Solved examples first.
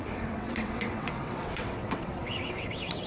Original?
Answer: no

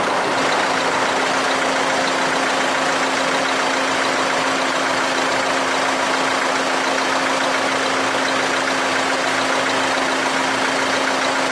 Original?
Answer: yes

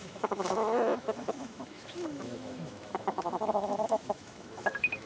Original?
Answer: no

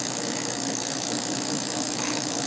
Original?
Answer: no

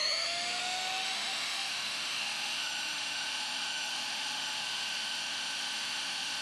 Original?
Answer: no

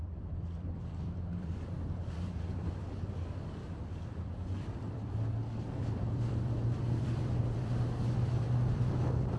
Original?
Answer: no